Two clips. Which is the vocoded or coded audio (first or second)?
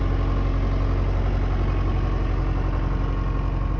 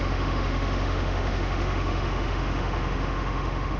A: second